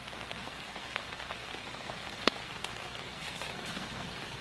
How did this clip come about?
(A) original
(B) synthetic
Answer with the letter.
B